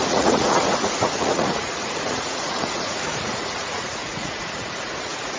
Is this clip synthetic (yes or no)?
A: yes